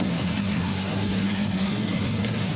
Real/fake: fake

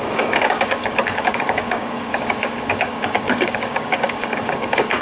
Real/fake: fake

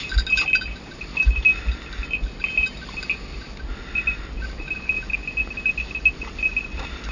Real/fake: real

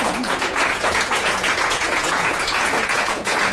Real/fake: fake